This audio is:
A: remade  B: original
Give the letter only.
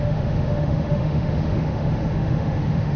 A